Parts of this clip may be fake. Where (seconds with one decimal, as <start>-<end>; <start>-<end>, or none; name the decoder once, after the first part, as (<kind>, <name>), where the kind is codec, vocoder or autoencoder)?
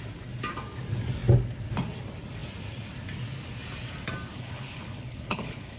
4.3-5.8 (codec, HILCodec)